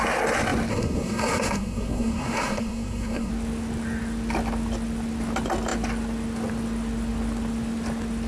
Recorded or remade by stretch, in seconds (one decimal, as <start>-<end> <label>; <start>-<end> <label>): 0.0-0.7 recorded; 0.7-3.3 remade; 3.3-8.3 recorded